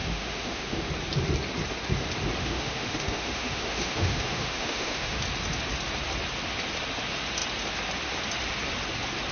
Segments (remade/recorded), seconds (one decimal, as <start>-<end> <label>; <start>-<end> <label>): 0.0-0.9 remade; 0.9-2.4 recorded; 2.4-5.2 remade; 5.2-9.3 recorded